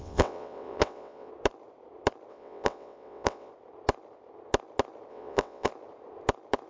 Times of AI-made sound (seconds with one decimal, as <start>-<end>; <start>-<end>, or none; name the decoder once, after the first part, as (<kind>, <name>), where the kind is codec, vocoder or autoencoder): 0.0-1.3 (vocoder, WaveNeXt); 2.3-3.5; 5.1-5.7